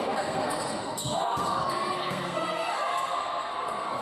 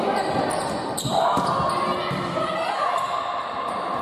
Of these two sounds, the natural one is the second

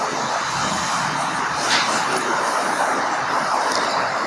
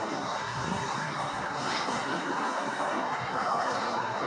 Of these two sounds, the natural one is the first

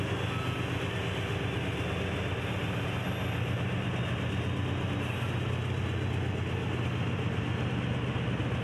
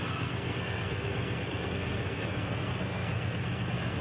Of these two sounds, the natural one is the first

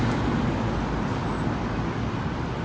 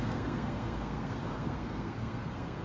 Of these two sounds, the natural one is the first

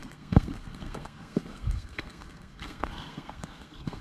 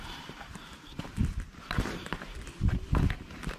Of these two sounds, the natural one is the second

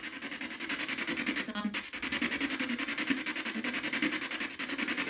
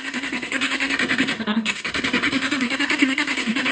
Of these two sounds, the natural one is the first